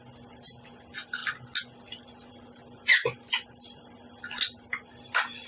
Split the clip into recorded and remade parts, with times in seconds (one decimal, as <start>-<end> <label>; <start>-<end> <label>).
0.0-5.5 recorded

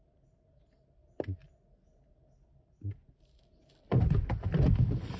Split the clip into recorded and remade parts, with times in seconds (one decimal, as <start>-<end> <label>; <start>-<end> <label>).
0.0-5.2 recorded

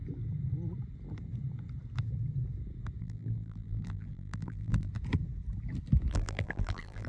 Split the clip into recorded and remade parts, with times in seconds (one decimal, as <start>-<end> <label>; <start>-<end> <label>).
0.0-3.0 recorded; 3.0-4.9 remade; 4.9-6.1 recorded; 6.1-7.1 remade